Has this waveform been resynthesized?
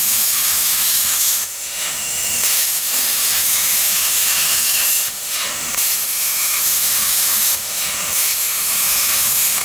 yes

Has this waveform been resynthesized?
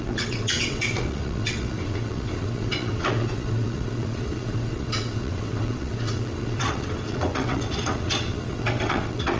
yes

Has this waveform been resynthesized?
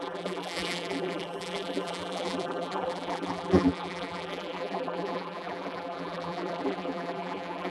yes